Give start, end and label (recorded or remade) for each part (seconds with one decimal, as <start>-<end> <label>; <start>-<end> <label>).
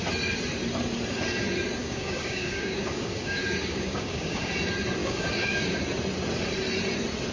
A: 0.0-1.8 recorded; 1.8-4.5 remade; 4.5-5.0 recorded; 5.0-5.8 remade; 5.8-7.3 recorded